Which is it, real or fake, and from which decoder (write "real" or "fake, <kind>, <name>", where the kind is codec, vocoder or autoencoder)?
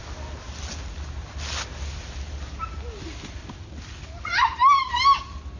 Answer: real